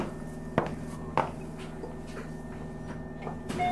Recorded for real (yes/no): yes